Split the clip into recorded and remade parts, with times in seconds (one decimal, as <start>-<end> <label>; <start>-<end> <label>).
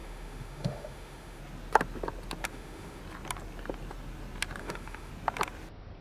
0.0-1.4 remade; 1.4-2.5 recorded; 2.5-3.0 remade; 3.0-4.6 recorded; 4.6-5.1 remade; 5.1-6.0 recorded